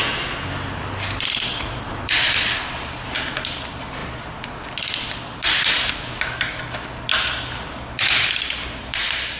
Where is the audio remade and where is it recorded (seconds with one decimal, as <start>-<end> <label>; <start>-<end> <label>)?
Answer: 0.0-0.8 recorded; 0.8-4.0 remade; 4.0-5.9 recorded; 5.9-9.4 remade